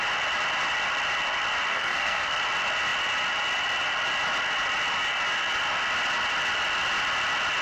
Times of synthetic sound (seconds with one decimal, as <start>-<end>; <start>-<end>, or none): 1.7-2.4